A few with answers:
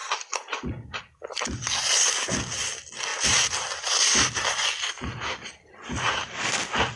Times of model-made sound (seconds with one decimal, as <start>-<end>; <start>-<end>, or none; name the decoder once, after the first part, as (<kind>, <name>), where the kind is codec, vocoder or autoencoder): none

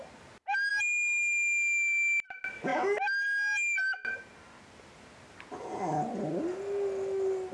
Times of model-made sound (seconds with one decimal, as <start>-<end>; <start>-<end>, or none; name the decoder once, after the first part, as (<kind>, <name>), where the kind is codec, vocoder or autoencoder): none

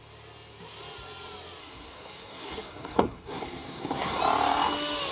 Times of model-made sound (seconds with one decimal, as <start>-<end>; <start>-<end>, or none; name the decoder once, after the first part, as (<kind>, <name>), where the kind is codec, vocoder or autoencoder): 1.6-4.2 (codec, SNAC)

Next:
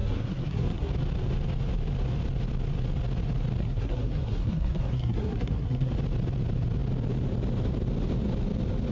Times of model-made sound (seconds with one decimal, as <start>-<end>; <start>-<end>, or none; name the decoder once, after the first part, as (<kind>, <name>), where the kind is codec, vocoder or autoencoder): 0.0-0.9 (codec, SNAC); 3.6-5.9

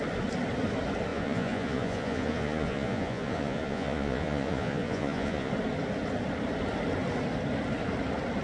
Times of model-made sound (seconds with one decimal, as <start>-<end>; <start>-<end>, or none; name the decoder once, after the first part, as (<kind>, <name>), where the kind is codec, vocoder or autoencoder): 1.1-5.5 (vocoder, Vocos)